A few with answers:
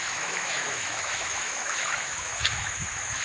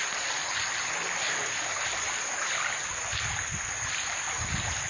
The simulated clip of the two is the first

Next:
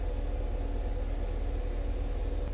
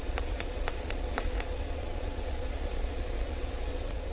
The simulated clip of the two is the second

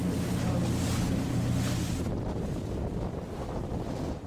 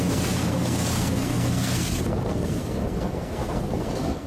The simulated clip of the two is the second